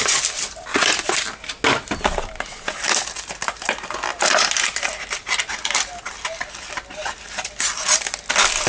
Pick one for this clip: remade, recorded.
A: recorded